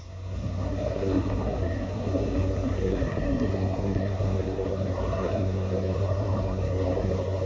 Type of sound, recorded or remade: remade